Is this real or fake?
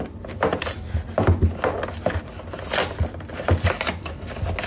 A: real